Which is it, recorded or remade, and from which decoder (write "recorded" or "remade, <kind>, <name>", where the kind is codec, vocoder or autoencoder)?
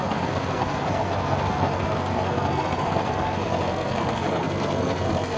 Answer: remade, codec, SNAC